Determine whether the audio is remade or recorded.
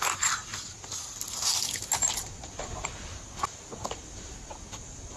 recorded